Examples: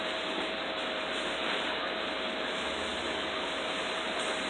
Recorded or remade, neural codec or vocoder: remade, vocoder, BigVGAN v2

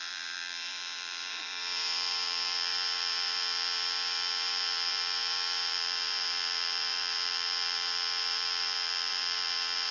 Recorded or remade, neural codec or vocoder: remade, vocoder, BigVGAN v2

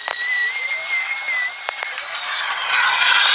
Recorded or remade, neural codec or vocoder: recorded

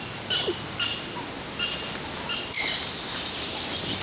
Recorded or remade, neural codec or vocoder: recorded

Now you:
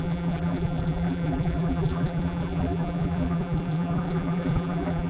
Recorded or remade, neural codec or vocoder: remade, vocoder, BigVGAN v2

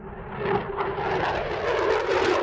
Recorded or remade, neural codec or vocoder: recorded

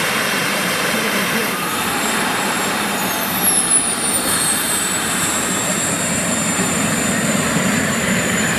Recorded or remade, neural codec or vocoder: remade, vocoder, BigVGAN v2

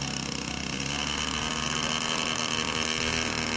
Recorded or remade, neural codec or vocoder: recorded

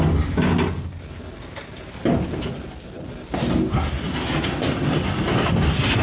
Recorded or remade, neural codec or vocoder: recorded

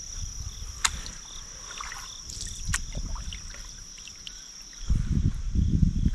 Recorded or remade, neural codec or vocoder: recorded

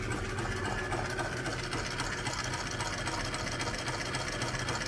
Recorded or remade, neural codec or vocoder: recorded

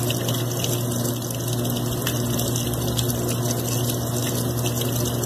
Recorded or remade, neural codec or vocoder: recorded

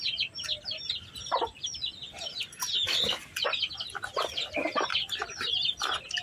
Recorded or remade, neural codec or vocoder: recorded